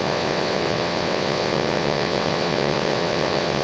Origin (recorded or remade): remade